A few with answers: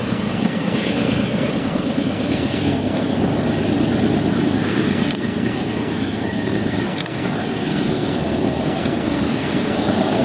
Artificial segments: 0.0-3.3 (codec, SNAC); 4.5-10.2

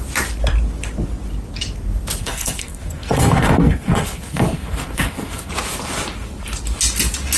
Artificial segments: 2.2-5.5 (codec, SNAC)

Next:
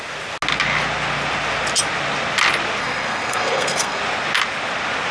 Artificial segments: 2.8-4.0 (codec, SNAC)

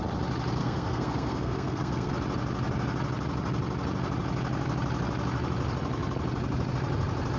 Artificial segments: 0.6-2.1 (codec, SNAC)

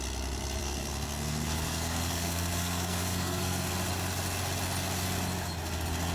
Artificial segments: 0.6-3.7 (codec, SNAC)

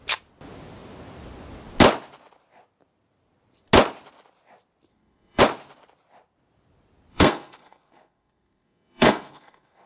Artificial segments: 4.9-5.4 (codec, SNAC); 7.1-9.9

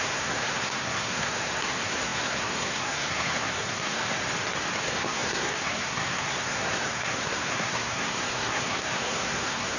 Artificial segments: 0.0-4.2 (codec, SNAC); 4.8-9.8